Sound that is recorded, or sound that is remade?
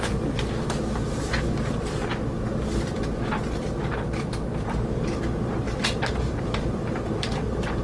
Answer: remade